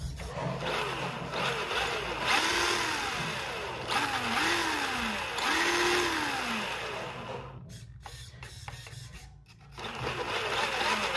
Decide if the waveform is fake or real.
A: real